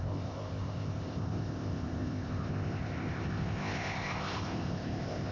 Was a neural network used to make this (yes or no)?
yes